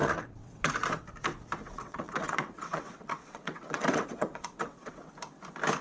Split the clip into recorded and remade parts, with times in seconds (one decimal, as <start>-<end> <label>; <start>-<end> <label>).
0.0-0.7 remade; 0.7-1.6 recorded; 1.6-5.1 remade; 5.1-5.8 recorded